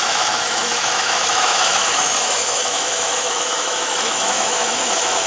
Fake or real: fake